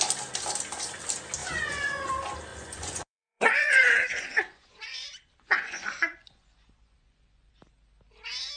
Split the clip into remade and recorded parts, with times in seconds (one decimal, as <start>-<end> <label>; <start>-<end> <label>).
0.0-1.4 recorded; 1.4-2.1 remade; 2.1-2.5 recorded; 2.5-7.5 remade; 7.5-8.6 recorded